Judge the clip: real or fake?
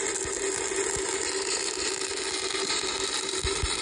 real